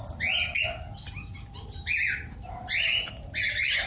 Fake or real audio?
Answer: real